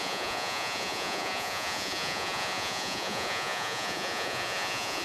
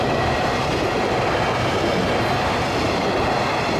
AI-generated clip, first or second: first